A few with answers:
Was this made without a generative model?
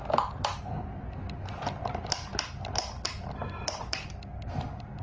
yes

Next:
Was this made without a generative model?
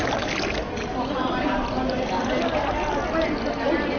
yes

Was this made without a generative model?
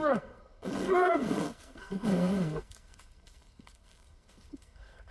no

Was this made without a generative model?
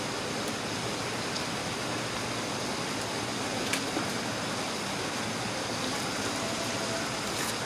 yes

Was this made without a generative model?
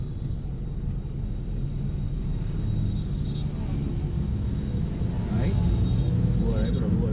yes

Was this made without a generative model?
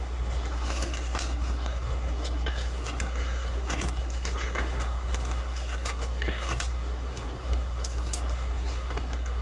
no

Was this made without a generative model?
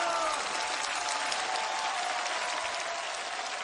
yes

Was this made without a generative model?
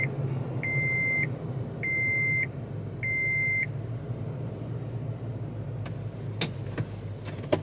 yes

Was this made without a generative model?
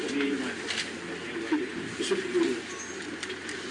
yes